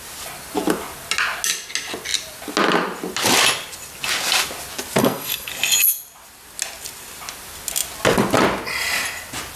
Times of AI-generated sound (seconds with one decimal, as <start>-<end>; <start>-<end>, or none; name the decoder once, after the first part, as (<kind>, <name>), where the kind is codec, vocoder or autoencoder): 5.0-5.5 (codec, SNAC)